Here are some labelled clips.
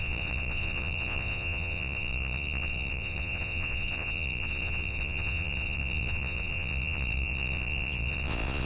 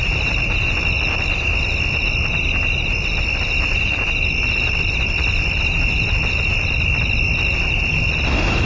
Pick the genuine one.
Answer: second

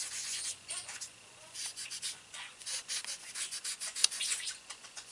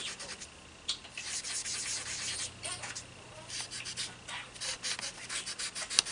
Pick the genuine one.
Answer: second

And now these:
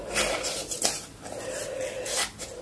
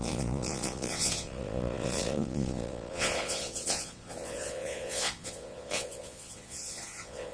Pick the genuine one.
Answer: first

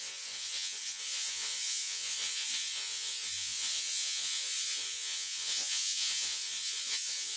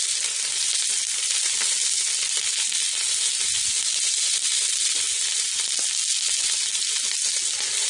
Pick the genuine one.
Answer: second